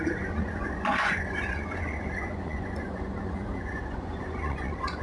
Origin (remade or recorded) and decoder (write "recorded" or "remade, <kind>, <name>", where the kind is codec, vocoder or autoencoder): remade, vocoder, Vocos